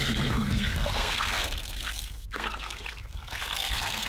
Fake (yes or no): yes